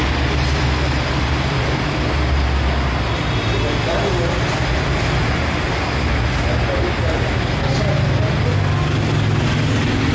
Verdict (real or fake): real